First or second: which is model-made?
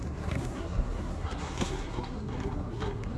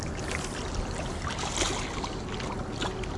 first